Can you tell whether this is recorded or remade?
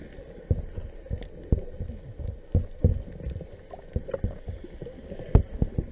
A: recorded